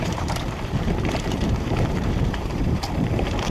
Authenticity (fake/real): fake